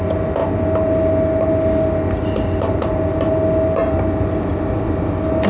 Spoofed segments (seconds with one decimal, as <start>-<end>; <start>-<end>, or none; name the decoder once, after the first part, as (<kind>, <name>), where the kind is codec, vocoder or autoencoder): none